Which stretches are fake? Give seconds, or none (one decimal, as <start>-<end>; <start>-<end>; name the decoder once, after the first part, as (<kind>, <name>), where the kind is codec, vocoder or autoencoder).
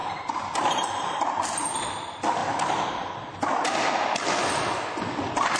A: 0.0-1.2 (vocoder, BigVGAN v2); 2.4-3.3